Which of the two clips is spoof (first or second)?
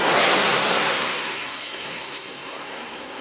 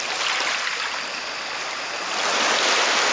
first